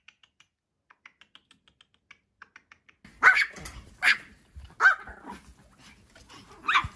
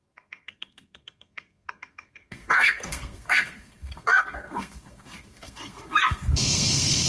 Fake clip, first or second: second